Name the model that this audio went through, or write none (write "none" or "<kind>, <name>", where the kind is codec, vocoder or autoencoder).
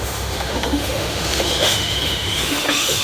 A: autoencoder, DAC-VAE